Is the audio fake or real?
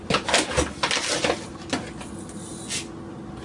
real